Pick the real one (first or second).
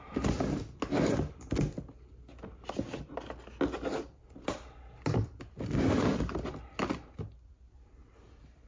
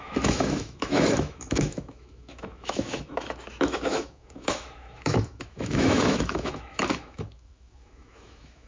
first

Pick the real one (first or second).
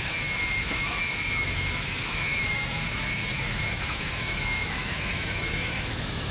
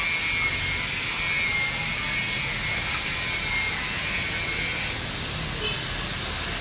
second